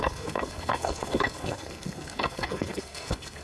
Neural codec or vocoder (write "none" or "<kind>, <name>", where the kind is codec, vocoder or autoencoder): codec, SNAC